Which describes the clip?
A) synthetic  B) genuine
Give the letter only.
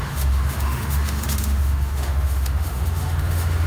A